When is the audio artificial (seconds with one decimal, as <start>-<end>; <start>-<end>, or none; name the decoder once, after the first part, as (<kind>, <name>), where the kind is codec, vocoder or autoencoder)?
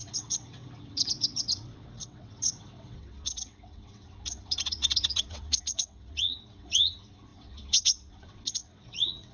0.0-9.3 (vocoder, WaveNeXt)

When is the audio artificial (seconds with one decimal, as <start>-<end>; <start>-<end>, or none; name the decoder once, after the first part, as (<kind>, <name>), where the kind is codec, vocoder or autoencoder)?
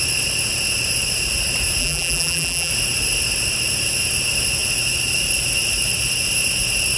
1.8-2.7 (vocoder, BigVGAN v2)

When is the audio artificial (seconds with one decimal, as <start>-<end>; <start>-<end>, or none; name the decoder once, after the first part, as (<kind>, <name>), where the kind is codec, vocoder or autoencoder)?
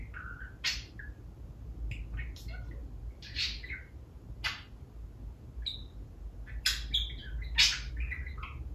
none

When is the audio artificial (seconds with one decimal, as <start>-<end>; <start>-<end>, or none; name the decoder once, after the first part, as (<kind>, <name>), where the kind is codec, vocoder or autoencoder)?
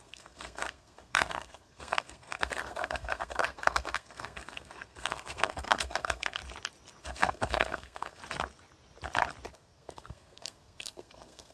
0.0-6.4 (codec, SNAC); 7.0-8.2; 9.5-11.5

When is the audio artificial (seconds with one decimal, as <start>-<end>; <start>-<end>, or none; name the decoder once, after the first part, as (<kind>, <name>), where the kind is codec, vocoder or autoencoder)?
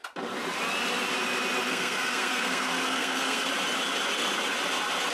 1.7-3.5 (codec, SNAC)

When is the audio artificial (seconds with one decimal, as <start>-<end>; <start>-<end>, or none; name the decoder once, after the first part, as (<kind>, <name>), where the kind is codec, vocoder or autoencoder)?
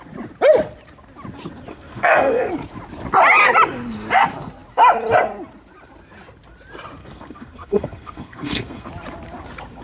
1.7-2.5 (codec, SNAC); 7.0-8.9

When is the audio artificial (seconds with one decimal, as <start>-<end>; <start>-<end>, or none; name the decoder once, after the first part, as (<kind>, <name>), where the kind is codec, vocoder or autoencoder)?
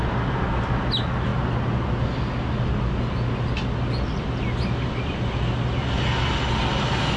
none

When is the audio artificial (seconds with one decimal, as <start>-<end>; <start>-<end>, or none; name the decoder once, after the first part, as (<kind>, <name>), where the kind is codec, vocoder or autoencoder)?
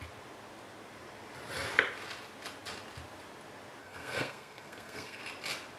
3.8-5.2 (codec, SNAC)